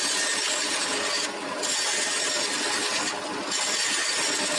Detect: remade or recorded recorded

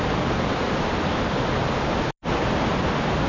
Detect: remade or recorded recorded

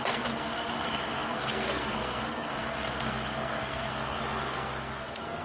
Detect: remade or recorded remade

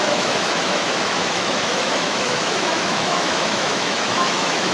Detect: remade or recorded remade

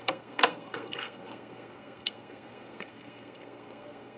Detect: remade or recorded remade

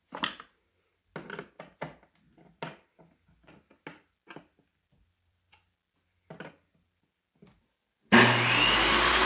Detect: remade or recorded recorded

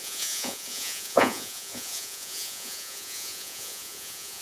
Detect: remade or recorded remade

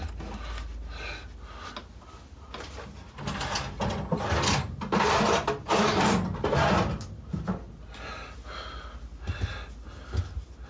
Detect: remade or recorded recorded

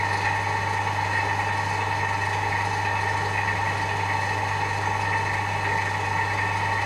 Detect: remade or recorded recorded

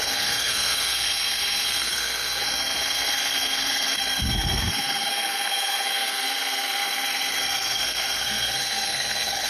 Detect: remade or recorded remade